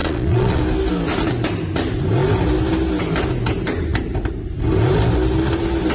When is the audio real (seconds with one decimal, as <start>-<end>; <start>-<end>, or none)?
0.6-5.9